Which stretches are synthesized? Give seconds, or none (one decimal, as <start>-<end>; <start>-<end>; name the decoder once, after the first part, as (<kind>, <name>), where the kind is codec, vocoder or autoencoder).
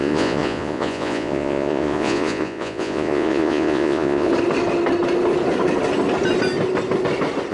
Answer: 0.0-4.3 (vocoder, Vocos)